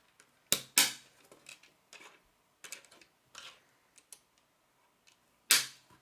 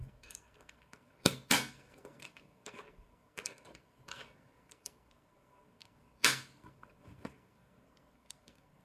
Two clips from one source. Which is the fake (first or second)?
second